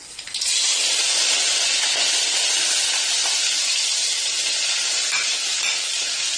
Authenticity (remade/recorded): recorded